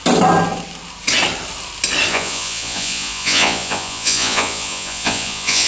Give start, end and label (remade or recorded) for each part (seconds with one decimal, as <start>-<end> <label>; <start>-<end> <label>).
0.0-2.1 recorded; 2.1-5.7 remade